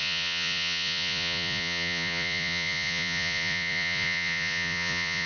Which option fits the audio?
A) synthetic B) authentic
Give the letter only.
A